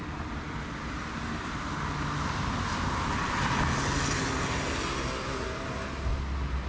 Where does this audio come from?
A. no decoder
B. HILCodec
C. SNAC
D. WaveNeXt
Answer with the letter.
A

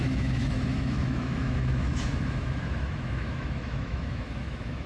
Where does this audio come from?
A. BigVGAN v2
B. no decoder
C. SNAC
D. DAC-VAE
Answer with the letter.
D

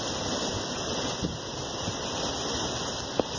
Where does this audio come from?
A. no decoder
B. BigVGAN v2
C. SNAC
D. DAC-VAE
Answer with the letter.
A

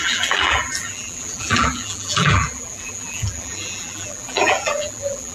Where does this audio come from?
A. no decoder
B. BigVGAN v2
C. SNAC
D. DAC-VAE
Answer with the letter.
B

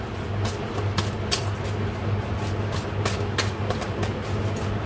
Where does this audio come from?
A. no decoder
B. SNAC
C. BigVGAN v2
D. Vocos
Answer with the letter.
A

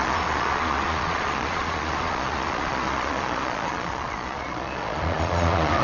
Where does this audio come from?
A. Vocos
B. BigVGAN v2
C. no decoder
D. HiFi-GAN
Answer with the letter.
A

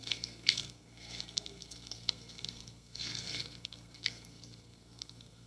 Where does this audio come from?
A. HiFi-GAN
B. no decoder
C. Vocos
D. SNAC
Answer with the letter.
D